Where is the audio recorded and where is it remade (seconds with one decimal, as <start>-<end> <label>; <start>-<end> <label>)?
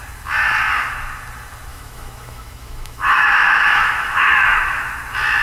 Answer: 0.0-1.7 recorded; 1.7-4.9 remade; 4.9-5.4 recorded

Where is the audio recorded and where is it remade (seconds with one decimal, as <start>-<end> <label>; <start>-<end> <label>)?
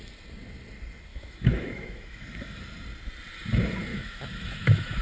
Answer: 0.0-1.1 recorded; 1.1-2.6 remade; 2.6-3.9 recorded; 3.9-5.0 remade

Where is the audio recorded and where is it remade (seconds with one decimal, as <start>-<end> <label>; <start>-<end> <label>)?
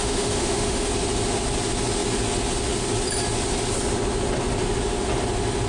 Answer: 0.0-0.9 remade; 0.9-5.7 recorded